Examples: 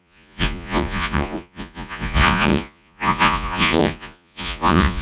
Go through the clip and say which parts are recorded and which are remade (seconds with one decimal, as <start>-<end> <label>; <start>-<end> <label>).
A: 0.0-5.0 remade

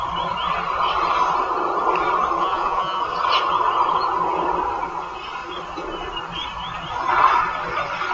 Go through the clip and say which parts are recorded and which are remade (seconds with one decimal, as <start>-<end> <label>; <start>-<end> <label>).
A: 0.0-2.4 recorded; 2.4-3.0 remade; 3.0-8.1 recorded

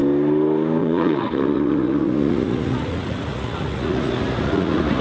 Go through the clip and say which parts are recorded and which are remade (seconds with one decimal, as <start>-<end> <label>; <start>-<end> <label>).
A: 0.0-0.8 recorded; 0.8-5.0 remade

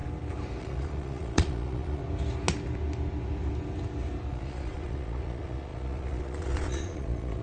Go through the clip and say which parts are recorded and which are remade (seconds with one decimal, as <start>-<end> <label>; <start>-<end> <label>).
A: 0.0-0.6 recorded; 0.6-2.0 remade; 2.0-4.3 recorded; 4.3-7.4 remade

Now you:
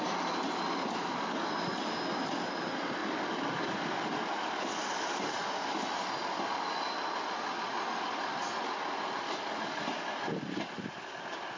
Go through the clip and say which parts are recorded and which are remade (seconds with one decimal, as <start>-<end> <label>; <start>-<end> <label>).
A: 0.0-8.3 recorded; 8.3-8.8 remade; 8.8-11.6 recorded

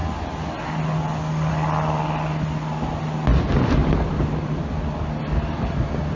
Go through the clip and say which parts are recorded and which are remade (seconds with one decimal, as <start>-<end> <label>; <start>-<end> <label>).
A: 0.0-6.2 recorded

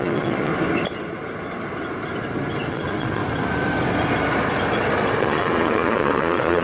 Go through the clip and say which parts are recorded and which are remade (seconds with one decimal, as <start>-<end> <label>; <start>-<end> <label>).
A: 0.0-0.5 remade; 0.5-2.7 recorded; 2.7-3.2 remade; 3.2-5.2 recorded; 5.2-6.6 remade